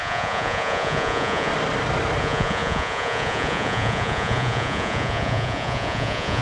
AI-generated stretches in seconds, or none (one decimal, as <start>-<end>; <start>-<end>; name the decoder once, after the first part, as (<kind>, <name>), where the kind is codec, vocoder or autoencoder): 0.0-1.5 (vocoder, Vocos); 2.2-6.4